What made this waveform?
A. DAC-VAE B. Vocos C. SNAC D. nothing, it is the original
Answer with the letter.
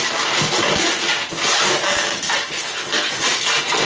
D